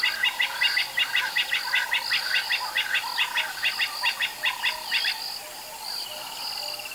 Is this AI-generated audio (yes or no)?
no